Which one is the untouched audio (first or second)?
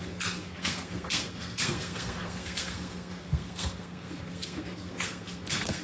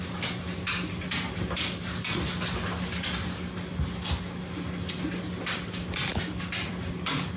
second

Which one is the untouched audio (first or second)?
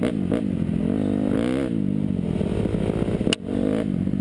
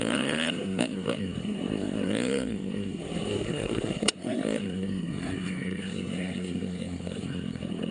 first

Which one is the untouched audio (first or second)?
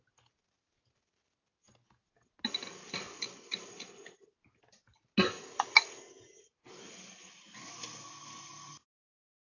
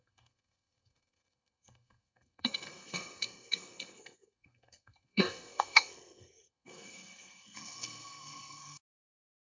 first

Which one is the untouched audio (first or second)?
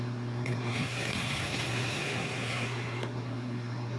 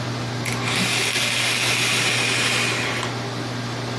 second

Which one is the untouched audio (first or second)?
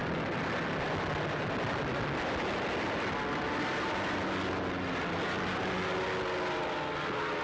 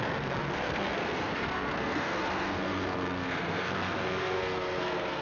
first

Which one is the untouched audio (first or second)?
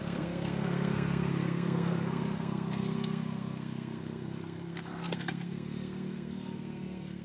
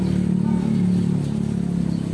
second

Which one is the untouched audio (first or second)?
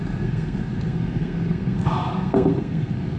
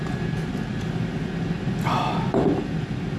second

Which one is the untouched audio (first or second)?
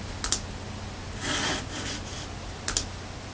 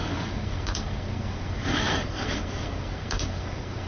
first